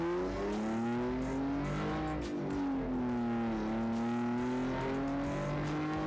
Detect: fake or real real